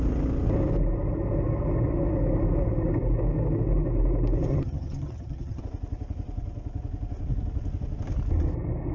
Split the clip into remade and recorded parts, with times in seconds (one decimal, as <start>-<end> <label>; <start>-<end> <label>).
0.0-4.5 recorded; 4.5-5.6 remade; 5.6-8.9 recorded